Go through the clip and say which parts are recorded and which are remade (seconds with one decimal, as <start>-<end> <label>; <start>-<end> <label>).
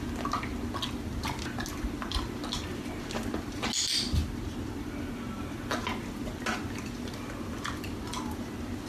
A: 0.0-8.9 recorded